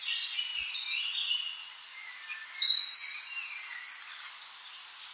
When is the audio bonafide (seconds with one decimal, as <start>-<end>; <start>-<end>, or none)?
0.0-5.1